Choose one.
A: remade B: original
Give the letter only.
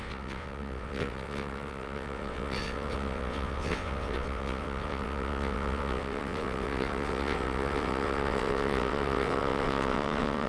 A